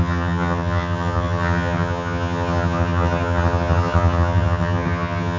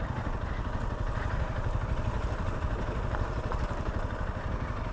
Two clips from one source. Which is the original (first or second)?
second